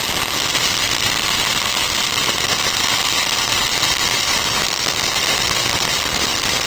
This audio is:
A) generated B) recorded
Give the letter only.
B